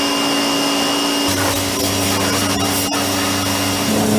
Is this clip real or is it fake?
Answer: real